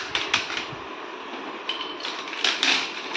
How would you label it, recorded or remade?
recorded